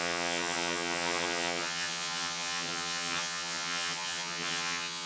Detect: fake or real fake